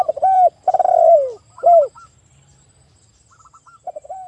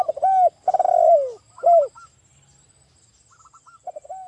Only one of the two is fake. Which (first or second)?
first